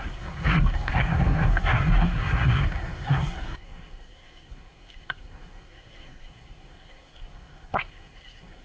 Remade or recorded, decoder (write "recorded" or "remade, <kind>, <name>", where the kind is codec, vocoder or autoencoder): remade, codec, SNAC